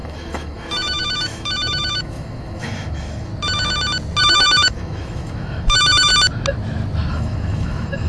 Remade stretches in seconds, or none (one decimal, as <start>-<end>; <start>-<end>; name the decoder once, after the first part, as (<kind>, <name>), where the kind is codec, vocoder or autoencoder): 0.0-3.3 (autoencoder, DAC-VAE); 4.2-6.1; 7.1-8.1